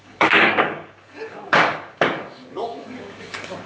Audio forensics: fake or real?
fake